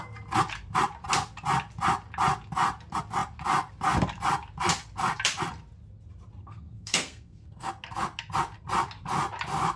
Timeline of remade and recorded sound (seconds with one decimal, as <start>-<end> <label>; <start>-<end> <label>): 0.0-6.4 recorded; 6.4-7.7 remade; 7.7-9.8 recorded